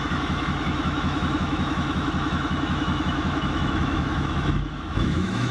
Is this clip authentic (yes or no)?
no